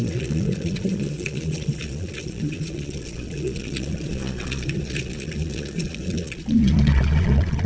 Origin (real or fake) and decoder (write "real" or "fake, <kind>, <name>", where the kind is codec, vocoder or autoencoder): fake, vocoder, Vocos